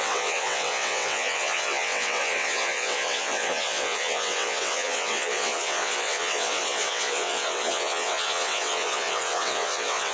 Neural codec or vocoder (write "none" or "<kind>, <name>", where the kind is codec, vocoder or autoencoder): vocoder, WaveNeXt